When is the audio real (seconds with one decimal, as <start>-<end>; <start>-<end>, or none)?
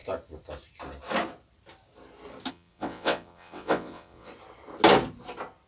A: 0.0-2.5; 4.3-5.7